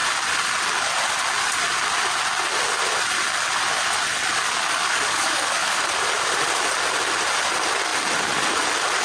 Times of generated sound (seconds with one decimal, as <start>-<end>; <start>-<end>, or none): 4.7-5.8